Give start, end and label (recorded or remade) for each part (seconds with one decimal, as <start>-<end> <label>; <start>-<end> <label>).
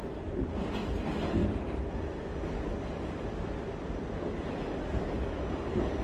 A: 0.0-6.0 recorded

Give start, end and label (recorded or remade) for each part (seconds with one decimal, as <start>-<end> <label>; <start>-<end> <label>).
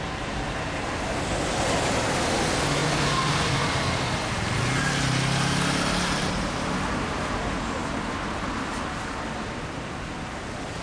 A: 0.0-10.8 recorded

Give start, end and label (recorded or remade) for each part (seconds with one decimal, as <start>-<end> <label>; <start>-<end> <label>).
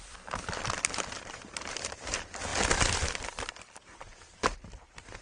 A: 0.0-2.5 remade; 2.5-3.2 recorded; 3.2-5.2 remade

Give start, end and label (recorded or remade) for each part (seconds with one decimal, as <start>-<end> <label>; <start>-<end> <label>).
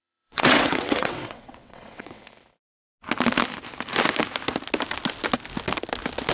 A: 0.0-2.2 remade; 2.2-6.3 recorded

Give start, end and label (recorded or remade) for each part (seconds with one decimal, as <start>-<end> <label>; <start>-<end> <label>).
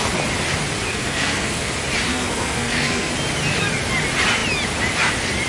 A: 0.0-0.9 recorded; 0.9-1.7 remade; 1.7-2.1 recorded; 2.1-3.1 remade; 3.1-5.5 recorded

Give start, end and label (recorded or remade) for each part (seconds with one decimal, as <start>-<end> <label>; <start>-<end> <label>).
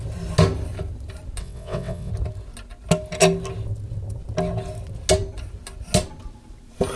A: 0.0-1.4 recorded; 1.4-2.1 remade; 2.1-7.0 recorded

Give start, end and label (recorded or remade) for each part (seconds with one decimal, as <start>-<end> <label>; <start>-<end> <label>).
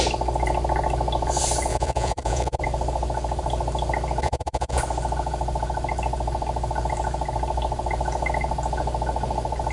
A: 0.0-1.7 recorded; 1.7-2.6 remade; 2.6-4.2 recorded; 4.2-4.8 remade; 4.8-9.7 recorded